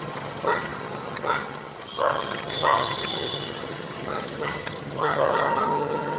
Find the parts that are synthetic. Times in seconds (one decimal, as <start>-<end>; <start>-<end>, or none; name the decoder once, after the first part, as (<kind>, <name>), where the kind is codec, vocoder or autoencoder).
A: 0.0-6.2 (vocoder, HiFi-GAN)